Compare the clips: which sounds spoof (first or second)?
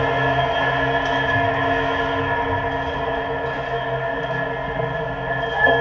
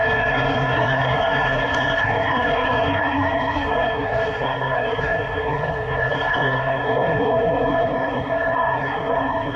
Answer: second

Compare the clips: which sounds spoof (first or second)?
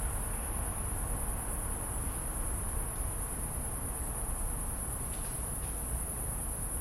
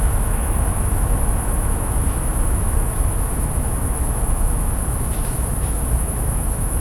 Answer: second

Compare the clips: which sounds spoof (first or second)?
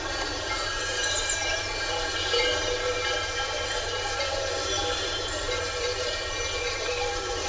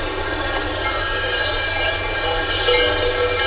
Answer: first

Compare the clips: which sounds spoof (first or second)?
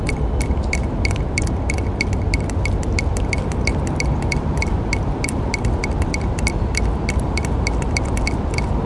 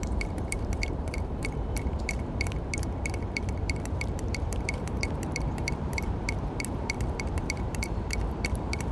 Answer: second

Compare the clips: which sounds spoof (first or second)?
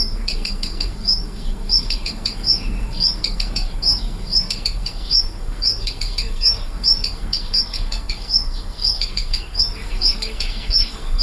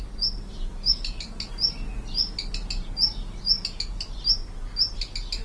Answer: first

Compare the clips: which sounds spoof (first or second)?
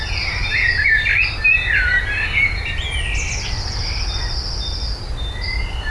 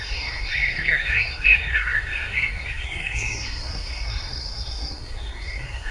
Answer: second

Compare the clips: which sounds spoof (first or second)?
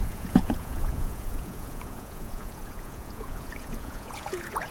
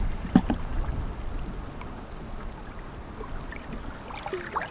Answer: first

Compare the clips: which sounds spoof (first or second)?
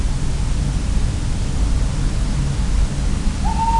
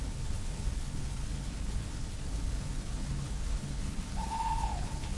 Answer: second